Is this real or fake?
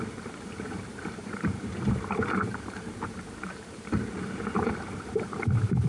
fake